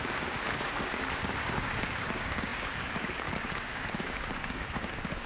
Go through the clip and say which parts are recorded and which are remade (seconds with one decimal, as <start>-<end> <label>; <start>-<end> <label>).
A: 0.0-5.3 remade